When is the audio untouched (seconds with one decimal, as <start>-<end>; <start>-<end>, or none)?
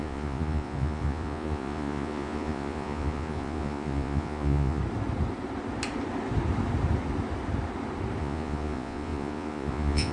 4.8-8.2